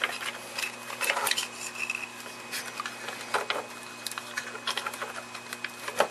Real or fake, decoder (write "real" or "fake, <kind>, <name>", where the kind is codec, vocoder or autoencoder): real